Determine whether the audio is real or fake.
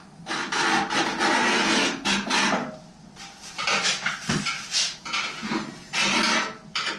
real